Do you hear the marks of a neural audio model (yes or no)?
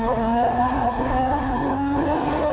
yes